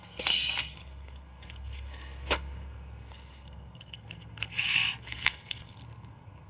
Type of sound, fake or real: fake